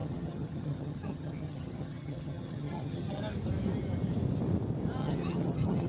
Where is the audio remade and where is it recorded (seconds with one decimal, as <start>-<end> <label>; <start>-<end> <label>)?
0.0-3.2 remade; 3.2-5.0 recorded; 5.0-5.9 remade